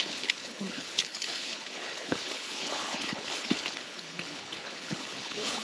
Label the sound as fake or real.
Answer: fake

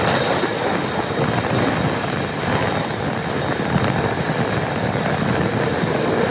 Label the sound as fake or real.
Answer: real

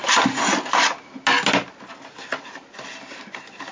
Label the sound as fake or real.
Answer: real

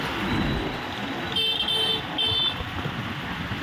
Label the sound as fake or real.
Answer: real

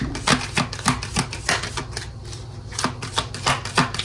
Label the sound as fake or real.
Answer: real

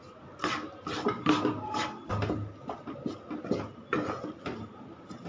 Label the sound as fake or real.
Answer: real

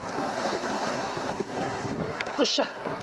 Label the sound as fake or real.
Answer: fake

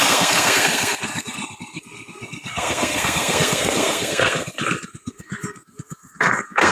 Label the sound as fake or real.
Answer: fake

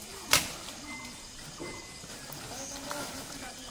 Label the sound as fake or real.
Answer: real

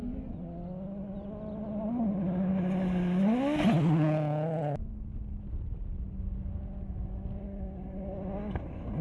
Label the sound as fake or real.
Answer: real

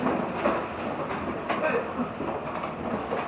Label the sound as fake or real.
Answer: real